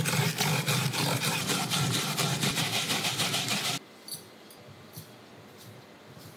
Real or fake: real